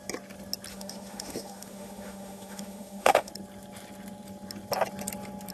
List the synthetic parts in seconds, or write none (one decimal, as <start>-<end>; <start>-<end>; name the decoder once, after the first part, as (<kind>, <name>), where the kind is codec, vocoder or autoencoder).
0.7-3.3 (autoencoder, DAC-VAE)